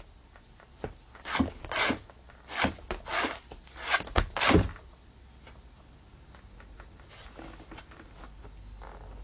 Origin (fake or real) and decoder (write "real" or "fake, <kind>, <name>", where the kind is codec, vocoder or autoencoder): real